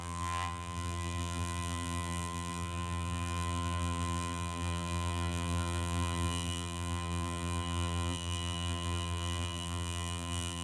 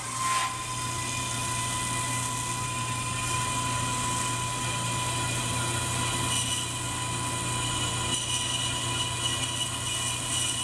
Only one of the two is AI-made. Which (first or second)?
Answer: first